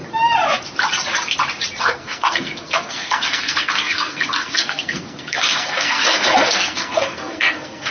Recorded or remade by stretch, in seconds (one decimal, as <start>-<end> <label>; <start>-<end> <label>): 0.0-1.8 recorded; 1.8-7.9 remade